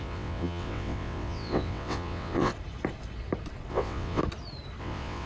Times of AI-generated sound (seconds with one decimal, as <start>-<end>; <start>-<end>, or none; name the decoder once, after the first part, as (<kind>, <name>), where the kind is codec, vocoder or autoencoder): 0.0-2.5 (vocoder, WaveNeXt); 3.7-4.2; 4.8-5.3